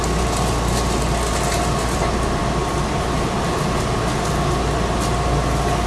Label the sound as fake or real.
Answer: real